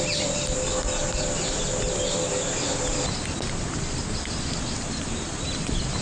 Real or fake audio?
real